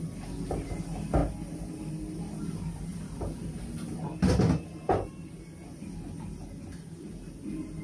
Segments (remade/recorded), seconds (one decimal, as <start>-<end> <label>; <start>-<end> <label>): 0.0-7.8 recorded